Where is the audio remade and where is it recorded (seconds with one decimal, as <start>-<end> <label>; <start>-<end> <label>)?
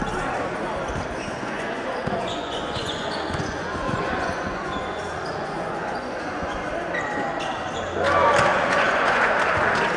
0.0-1.4 recorded; 1.4-6.7 remade; 6.7-8.5 recorded; 8.5-9.3 remade; 9.3-10.0 recorded